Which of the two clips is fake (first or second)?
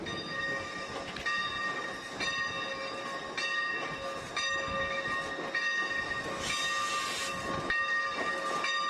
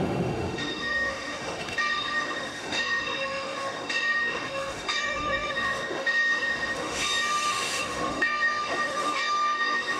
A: second